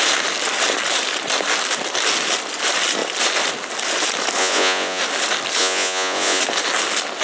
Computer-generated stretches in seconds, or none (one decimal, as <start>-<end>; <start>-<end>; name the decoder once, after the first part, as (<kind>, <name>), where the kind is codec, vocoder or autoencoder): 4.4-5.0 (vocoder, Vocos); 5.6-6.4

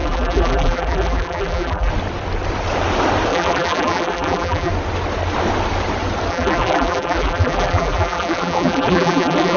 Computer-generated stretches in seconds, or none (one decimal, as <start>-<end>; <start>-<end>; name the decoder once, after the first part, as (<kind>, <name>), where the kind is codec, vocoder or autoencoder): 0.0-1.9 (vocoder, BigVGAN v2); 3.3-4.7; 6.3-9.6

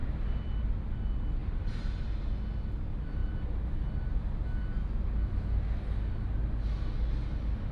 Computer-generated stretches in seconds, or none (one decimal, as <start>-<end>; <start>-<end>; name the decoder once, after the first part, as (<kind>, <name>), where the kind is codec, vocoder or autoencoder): 1.4-2.2 (vocoder, BigVGAN v2)